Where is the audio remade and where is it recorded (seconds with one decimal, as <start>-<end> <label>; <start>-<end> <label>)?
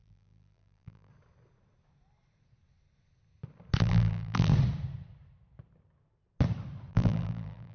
0.0-1.1 remade; 1.1-3.8 recorded; 3.8-4.5 remade; 4.5-6.9 recorded; 6.9-7.7 remade